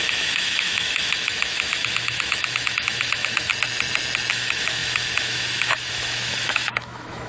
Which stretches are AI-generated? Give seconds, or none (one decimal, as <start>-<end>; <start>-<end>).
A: 0.0-3.5; 4.3-7.3